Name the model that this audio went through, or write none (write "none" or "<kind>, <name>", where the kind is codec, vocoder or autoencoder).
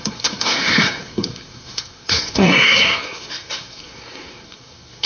codec, SNAC